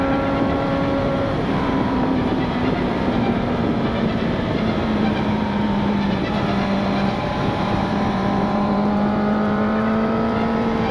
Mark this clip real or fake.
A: fake